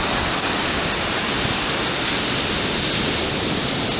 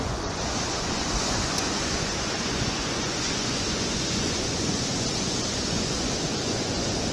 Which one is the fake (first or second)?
second